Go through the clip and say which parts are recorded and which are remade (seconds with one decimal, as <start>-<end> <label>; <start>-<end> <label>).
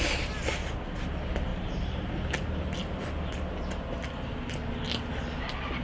0.0-5.8 recorded